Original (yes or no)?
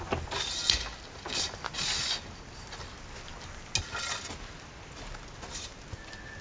yes